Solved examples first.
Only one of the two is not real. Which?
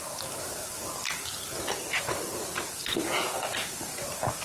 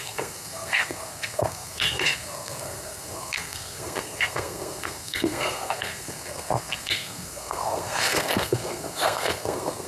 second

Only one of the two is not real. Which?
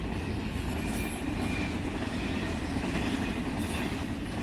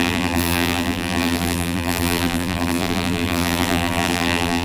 second